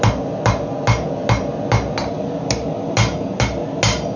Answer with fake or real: real